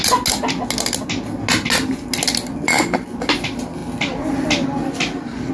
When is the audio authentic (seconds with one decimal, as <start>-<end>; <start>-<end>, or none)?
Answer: 0.0-5.5